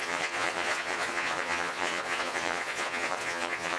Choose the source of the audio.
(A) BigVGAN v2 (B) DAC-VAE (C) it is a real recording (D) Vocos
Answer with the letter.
D